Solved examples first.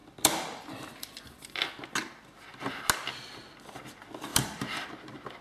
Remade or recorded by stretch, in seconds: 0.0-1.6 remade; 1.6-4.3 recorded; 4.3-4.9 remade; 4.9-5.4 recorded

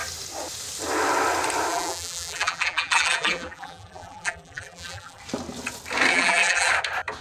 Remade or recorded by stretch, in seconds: 0.0-1.7 recorded; 1.7-5.2 remade; 5.2-6.1 recorded; 6.1-6.7 remade; 6.7-7.2 recorded

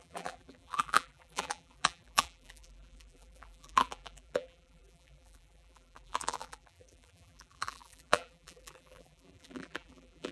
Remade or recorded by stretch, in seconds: 0.0-10.3 remade

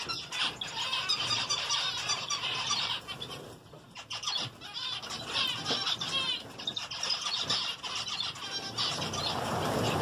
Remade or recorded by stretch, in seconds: 0.0-1.1 recorded; 1.1-6.1 remade; 6.1-10.0 recorded

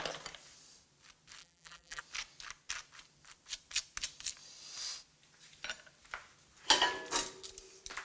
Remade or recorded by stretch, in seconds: 0.0-1.4 recorded; 1.4-2.0 remade; 2.0-8.0 recorded